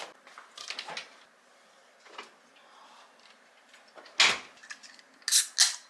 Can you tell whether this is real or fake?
real